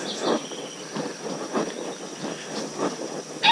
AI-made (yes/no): no